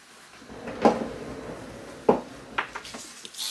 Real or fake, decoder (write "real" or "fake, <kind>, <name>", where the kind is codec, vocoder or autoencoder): real